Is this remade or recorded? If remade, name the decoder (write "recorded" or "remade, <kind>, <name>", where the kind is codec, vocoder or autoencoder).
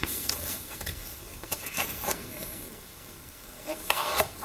remade, codec, SNAC